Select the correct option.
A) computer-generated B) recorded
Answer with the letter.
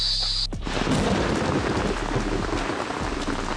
B